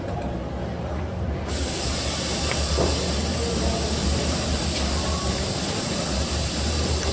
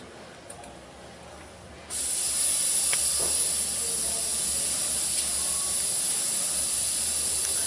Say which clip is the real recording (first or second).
second